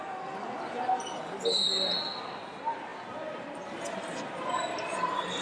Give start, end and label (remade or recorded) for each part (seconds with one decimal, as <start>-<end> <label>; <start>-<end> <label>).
0.0-5.4 recorded